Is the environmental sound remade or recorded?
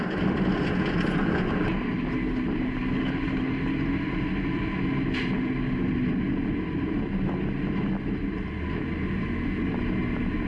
recorded